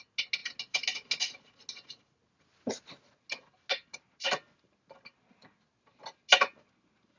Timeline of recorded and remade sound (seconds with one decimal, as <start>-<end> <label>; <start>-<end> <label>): 0.0-7.2 recorded